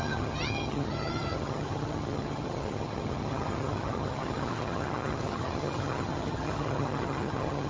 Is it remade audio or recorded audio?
remade